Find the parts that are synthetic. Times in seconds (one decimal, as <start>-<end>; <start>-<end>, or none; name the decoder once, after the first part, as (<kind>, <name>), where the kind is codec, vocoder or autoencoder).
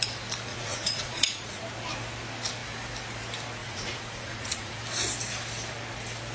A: 0.5-1.6 (vocoder, Vocos); 3.6-4.8